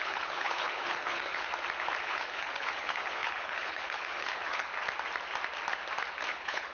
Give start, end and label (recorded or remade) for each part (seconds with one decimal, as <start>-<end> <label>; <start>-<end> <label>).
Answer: 0.0-1.5 remade; 1.5-2.0 recorded; 2.0-4.7 remade; 4.7-6.3 recorded; 6.3-6.7 remade